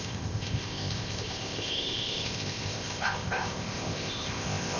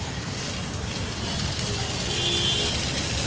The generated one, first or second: first